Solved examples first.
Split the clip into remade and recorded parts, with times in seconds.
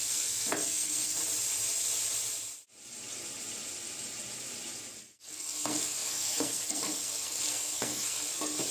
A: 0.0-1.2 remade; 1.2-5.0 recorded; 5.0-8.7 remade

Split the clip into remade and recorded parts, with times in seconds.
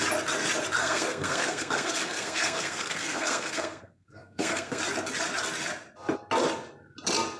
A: 0.0-0.8 recorded; 0.8-4.8 remade; 4.8-7.4 recorded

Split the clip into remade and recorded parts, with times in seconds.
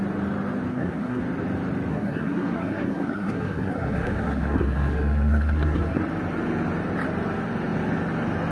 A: 0.0-0.7 recorded; 0.7-1.2 remade; 1.2-1.9 recorded; 1.9-6.0 remade; 6.0-8.5 recorded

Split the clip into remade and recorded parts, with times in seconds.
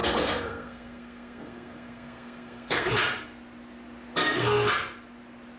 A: 0.0-2.9 remade; 2.9-4.2 recorded; 4.2-4.7 remade; 4.7-5.6 recorded